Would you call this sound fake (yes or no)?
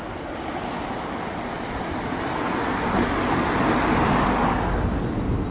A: no